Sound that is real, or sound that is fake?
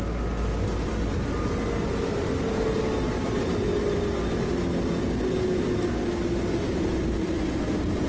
real